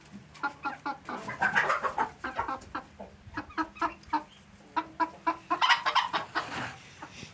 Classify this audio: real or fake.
real